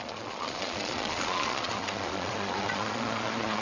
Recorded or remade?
remade